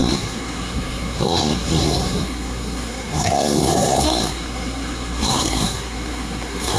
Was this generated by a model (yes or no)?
yes